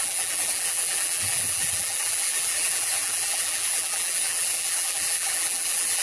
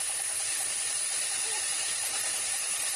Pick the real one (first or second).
second